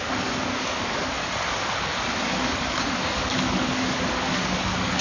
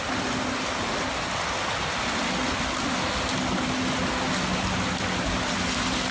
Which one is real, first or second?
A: second